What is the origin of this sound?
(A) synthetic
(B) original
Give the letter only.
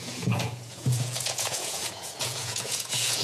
A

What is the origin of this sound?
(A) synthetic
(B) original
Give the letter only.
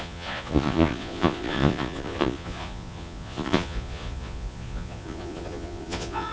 A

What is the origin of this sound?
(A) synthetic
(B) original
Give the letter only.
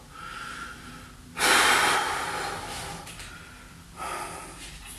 B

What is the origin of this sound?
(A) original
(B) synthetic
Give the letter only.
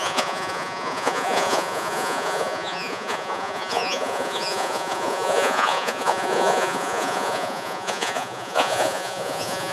B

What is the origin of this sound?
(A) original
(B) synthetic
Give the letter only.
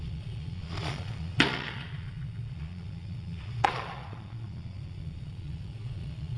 B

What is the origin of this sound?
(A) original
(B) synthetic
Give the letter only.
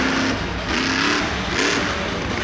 A